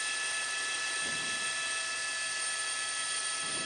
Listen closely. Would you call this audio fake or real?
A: real